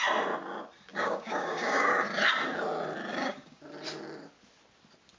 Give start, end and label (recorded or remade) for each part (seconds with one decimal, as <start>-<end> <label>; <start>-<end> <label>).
0.0-0.9 recorded; 0.9-1.9 remade; 1.9-3.1 recorded; 3.1-3.6 remade; 3.6-5.2 recorded